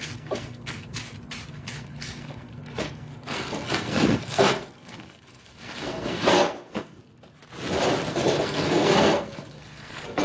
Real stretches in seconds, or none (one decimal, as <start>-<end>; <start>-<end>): 1.0-1.5; 7.0-8.1